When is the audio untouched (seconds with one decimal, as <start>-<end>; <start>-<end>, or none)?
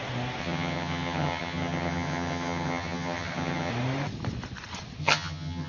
0.0-0.4; 3.7-5.0